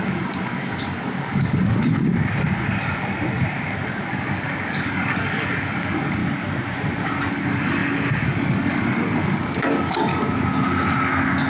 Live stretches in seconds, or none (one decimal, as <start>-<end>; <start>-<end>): 2.1-4.1; 6.2-7.3; 10.1-11.5